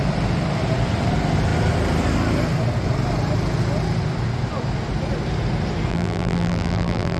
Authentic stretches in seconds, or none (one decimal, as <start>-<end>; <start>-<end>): 0.0-5.9